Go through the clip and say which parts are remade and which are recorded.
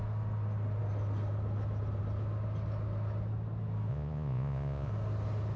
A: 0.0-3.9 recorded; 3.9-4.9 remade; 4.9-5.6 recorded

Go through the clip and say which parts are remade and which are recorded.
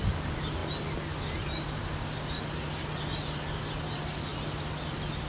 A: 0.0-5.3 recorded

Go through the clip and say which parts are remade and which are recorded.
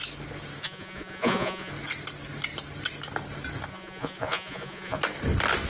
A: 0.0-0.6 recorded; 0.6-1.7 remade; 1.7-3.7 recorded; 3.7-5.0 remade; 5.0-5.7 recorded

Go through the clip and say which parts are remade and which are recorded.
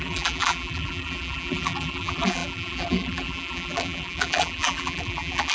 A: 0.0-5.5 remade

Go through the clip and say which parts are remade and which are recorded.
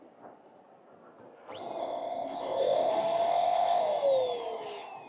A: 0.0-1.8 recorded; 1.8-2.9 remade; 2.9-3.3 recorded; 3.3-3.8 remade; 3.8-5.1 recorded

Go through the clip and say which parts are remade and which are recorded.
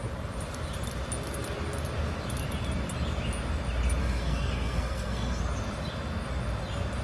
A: 0.0-4.0 recorded; 4.0-5.4 remade; 5.4-7.0 recorded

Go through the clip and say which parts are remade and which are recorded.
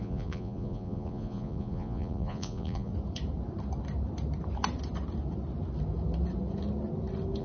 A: 0.0-2.9 remade; 2.9-7.4 recorded